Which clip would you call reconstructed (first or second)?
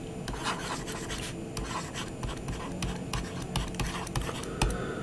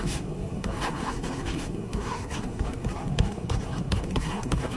second